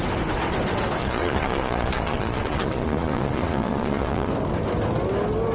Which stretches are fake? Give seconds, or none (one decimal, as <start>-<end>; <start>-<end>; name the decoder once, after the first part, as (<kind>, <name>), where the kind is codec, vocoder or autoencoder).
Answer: 1.0-4.3 (vocoder, Vocos)